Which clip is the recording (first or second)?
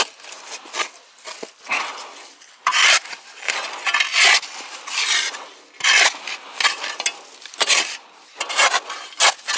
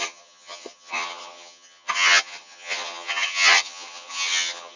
first